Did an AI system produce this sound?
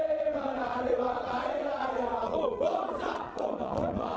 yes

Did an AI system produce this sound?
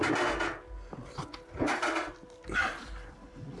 no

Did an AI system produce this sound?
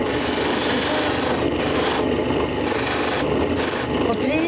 no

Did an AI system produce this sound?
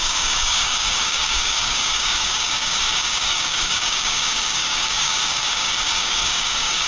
yes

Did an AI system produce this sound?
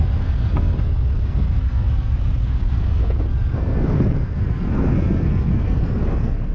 yes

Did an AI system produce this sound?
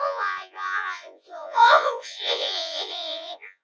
yes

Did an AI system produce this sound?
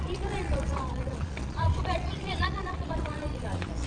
yes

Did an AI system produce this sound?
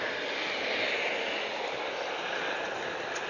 no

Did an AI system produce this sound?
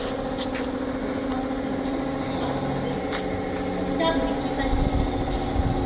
no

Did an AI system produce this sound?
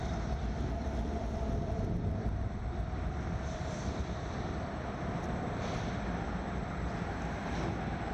yes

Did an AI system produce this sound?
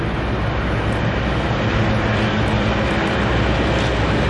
no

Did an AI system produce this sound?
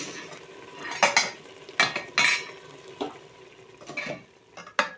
no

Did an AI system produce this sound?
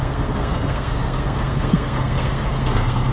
yes